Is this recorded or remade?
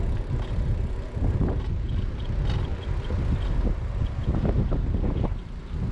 recorded